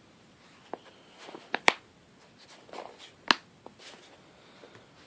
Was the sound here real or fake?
real